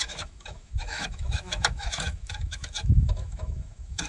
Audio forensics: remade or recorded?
remade